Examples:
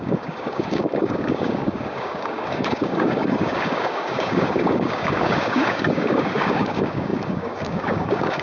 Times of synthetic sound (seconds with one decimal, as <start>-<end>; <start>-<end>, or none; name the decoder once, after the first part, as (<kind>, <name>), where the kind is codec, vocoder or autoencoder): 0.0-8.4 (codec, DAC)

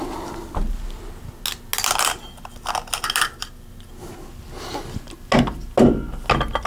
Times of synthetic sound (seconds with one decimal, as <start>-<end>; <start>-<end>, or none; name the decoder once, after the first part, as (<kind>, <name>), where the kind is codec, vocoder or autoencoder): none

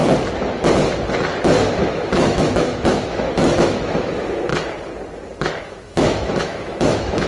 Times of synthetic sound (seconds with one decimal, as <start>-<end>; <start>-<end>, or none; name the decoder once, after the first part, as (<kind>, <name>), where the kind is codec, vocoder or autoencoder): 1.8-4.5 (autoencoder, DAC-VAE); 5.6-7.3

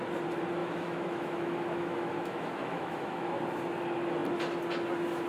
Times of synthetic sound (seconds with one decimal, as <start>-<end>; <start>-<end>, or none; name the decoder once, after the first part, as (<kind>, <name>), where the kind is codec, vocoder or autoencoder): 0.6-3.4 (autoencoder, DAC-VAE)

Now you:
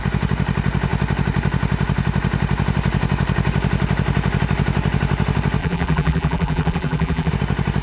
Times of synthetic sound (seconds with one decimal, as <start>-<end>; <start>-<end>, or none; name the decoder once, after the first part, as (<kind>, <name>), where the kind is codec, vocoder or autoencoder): 5.6-7.3 (vocoder, BigVGAN v2)

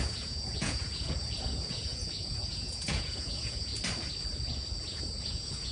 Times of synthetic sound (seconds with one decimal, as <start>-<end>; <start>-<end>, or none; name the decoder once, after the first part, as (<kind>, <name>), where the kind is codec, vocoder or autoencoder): 0.0-3.7 (vocoder, Vocos); 4.8-5.7

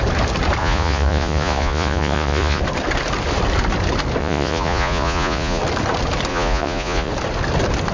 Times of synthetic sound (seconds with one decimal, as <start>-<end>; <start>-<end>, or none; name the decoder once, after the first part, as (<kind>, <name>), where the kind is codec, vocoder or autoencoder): 0.6-2.6 (vocoder, Vocos); 4.2-5.6; 6.3-7.1

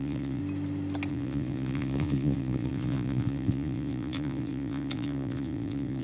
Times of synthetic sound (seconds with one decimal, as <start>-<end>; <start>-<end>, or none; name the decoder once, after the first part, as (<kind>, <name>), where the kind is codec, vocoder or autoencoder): 0.0-0.4 (vocoder, Vocos); 1.1-6.0